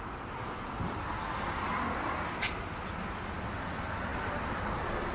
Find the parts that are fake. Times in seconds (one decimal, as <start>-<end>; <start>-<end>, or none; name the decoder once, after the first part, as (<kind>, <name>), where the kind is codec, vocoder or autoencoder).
none